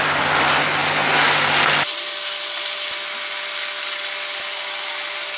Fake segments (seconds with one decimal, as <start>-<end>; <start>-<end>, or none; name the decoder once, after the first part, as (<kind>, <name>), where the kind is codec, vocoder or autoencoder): none